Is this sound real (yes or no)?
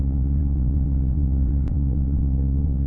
no